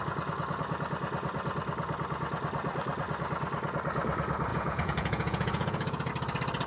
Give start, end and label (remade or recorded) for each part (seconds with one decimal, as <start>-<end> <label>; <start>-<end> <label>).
0.0-4.5 recorded; 4.5-6.1 remade; 6.1-6.7 recorded